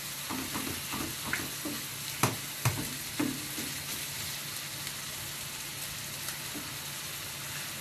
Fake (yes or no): no